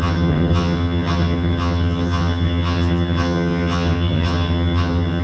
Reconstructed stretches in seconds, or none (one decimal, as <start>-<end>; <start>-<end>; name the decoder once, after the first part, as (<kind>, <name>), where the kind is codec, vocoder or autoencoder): 0.0-5.2 (vocoder, HiFi-GAN)